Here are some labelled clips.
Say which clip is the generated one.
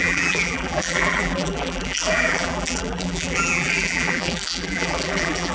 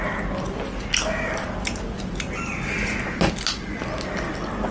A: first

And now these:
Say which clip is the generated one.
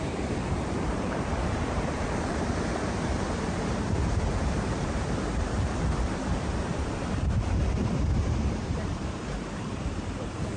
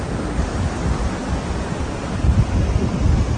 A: first